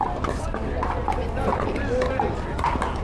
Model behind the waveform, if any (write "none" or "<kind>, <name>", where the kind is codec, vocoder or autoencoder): none